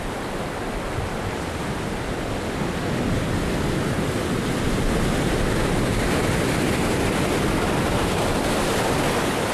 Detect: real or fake real